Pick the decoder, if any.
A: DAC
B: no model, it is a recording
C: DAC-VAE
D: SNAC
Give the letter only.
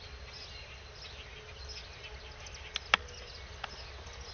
B